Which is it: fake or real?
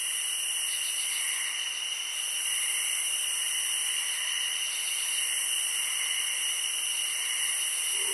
real